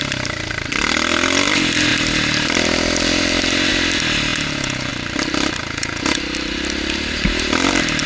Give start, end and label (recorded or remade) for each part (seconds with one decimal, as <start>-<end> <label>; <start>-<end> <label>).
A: 0.0-4.3 recorded; 4.3-4.9 remade; 4.9-5.6 recorded; 5.6-6.2 remade; 6.2-8.1 recorded